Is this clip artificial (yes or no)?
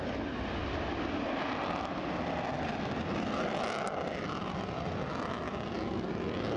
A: no